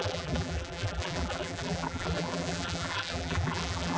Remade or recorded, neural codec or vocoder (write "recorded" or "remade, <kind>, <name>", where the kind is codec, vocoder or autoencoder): remade, vocoder, BigVGAN v2